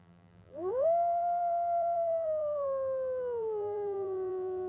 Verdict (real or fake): fake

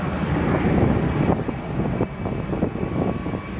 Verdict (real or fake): real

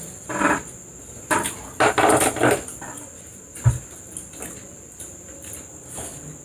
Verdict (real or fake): real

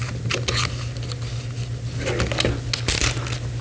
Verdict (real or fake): real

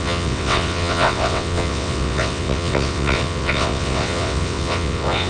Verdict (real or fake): fake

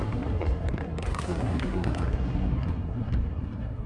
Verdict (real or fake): fake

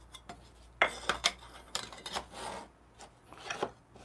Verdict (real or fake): real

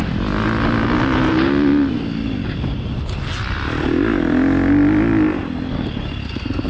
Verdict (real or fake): real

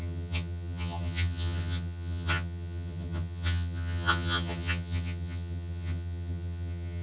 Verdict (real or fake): fake